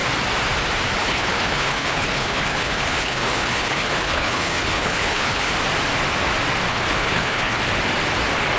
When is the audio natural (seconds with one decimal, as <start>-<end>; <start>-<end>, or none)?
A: 0.0-1.0; 5.5-6.7; 7.6-8.6